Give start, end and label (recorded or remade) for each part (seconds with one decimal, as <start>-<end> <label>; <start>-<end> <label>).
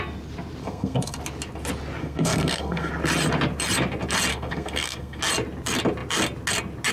0.0-0.6 recorded; 0.6-1.2 remade; 1.2-2.0 recorded; 2.0-2.9 remade; 2.9-4.3 recorded; 4.3-5.2 remade; 5.2-6.9 recorded